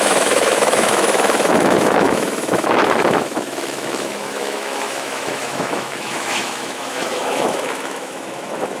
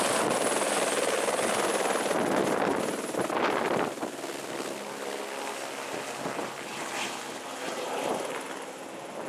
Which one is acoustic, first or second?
second